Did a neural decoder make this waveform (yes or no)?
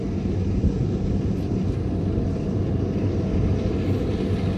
no